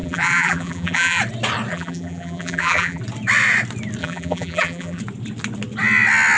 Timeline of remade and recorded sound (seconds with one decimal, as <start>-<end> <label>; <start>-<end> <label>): 0.0-1.2 remade; 1.2-1.7 recorded; 1.7-3.0 remade; 3.0-4.0 recorded; 4.0-5.0 remade; 5.0-6.4 recorded